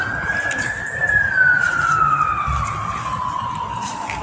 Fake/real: real